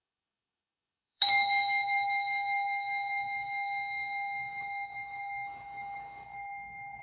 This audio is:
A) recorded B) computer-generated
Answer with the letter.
B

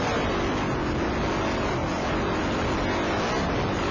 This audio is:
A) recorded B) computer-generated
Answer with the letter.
A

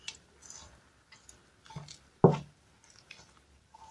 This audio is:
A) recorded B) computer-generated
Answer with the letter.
A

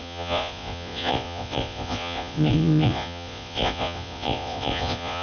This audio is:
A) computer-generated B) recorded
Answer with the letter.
A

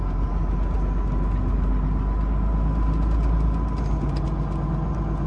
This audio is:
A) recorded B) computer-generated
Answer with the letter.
A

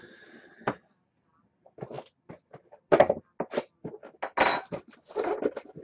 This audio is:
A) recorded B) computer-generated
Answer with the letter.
A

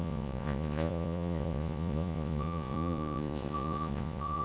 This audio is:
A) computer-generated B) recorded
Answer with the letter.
A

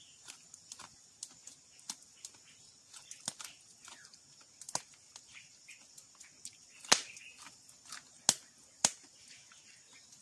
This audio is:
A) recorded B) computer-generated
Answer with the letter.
A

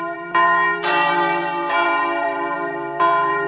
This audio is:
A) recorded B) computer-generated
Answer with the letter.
B